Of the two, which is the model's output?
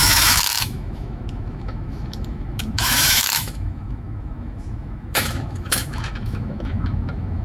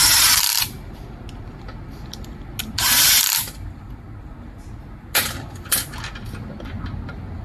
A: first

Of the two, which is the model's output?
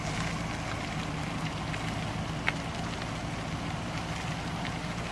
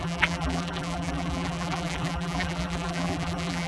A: second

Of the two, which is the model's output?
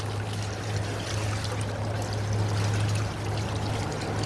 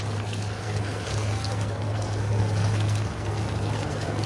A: second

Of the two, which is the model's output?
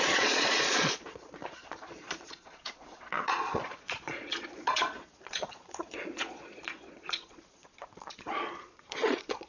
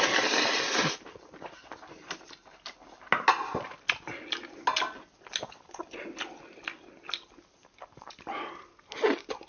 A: first